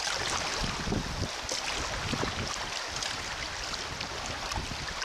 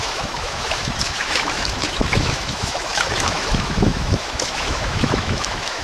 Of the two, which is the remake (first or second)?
second